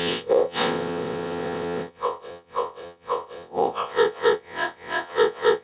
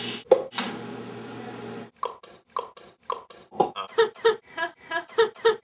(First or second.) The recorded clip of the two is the second